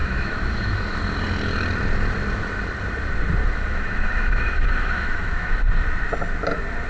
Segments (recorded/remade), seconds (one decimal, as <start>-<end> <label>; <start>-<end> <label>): 0.0-1.0 remade; 1.0-3.4 recorded; 3.4-5.5 remade; 5.5-6.9 recorded